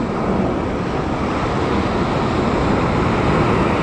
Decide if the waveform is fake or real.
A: real